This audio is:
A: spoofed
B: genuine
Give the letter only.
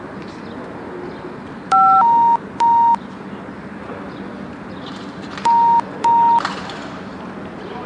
B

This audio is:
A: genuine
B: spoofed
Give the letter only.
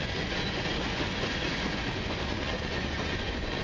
B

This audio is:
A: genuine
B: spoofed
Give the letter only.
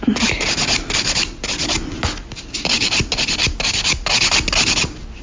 A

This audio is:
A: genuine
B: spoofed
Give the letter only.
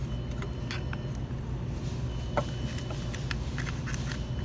A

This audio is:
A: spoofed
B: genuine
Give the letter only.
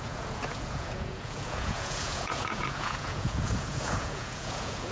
A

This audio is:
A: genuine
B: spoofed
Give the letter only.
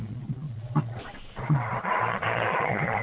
B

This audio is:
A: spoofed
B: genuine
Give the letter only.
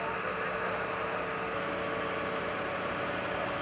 B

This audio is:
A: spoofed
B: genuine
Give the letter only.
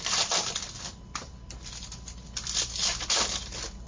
B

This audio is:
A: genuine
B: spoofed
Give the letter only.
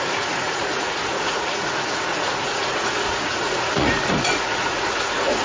B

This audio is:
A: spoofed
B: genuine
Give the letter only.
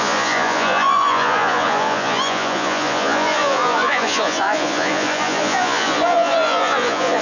A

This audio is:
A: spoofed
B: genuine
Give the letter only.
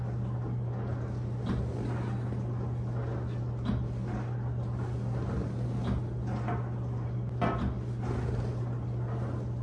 B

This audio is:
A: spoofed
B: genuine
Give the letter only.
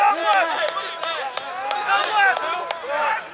B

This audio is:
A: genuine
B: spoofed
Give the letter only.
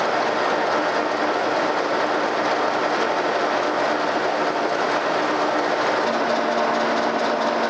A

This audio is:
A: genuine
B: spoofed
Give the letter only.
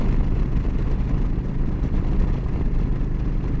A